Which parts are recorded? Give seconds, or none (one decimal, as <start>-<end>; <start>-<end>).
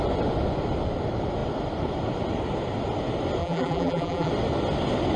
0.0-3.4; 4.3-5.2